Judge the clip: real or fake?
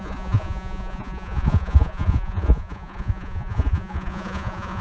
fake